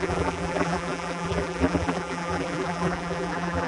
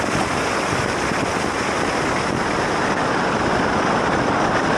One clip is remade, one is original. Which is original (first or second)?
second